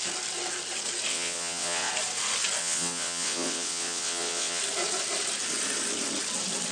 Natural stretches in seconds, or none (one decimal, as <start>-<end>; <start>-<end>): 0.0-1.1; 1.9-2.6; 4.6-6.7